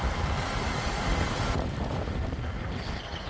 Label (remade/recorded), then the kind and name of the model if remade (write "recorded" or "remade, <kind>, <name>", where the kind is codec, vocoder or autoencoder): recorded